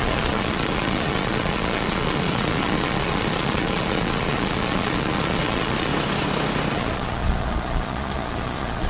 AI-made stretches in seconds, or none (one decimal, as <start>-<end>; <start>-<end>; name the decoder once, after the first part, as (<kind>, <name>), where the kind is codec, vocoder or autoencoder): 0.0-5.9 (vocoder, Vocos); 6.7-8.9